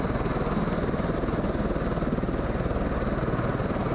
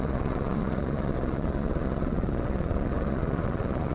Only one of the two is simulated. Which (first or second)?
second